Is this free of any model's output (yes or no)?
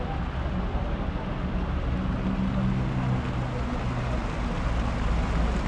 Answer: yes